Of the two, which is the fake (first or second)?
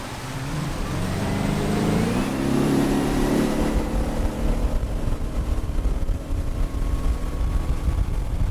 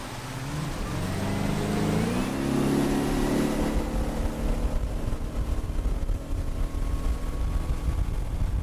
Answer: first